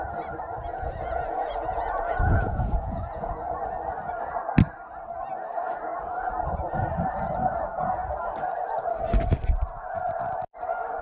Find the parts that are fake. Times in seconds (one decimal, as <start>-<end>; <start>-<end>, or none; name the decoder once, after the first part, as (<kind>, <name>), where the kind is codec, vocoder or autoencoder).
0.7-3.5 (vocoder, Vocos)